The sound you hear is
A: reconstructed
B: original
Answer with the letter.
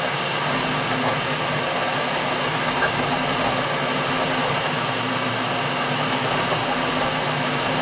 B